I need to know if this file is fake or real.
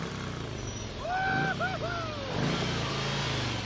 real